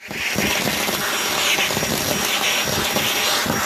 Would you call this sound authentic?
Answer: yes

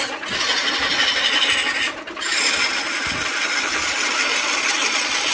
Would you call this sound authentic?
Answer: yes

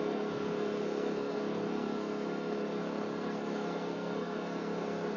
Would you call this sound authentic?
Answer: no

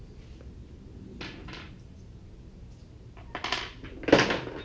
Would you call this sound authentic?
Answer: yes